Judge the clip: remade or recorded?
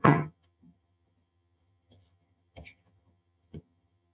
remade